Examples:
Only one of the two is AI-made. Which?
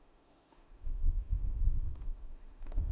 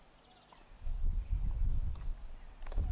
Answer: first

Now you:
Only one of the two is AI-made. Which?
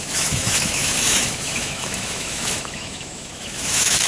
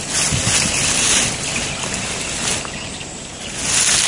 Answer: first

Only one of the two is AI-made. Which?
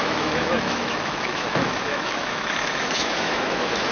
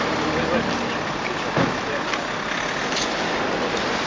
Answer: first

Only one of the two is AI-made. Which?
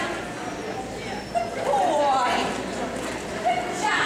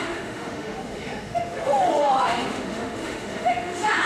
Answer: second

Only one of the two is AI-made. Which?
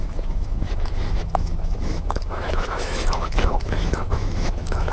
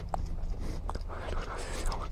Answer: first